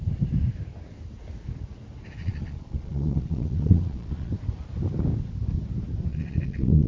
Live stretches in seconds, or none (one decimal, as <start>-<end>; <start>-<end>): 0.0-2.2; 4.3-6.1